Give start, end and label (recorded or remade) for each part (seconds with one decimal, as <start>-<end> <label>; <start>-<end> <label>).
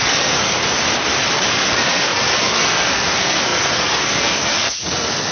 0.0-0.6 remade; 0.6-1.5 recorded; 1.5-5.3 remade